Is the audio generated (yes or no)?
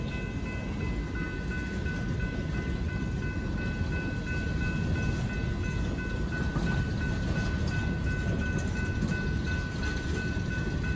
no